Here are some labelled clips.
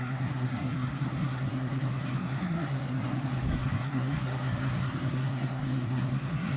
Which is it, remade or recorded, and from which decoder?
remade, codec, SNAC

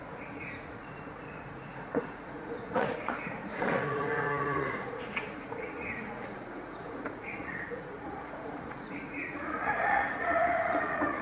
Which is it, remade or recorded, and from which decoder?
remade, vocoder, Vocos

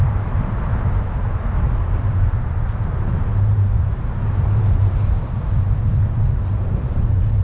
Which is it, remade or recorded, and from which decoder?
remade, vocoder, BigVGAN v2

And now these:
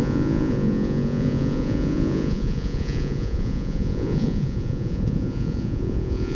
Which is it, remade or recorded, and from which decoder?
remade, vocoder, Vocos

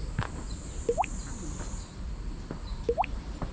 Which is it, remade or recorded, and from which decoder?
recorded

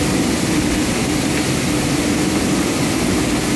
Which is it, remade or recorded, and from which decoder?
recorded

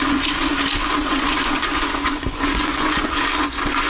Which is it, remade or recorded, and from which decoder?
remade, vocoder, Vocos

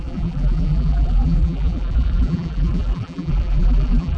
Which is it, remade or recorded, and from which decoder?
remade, vocoder, BigVGAN v2